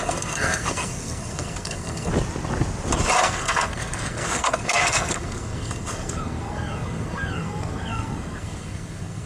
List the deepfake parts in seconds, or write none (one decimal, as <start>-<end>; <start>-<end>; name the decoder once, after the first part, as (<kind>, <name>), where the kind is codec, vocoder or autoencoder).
0.0-2.1 (codec, SNAC); 3.2-9.3